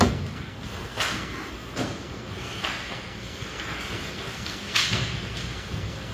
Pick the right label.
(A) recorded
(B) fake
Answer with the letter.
B